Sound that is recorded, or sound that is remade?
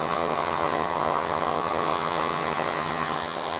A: remade